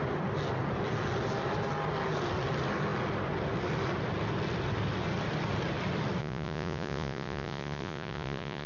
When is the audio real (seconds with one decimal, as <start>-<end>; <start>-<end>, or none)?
0.0-6.2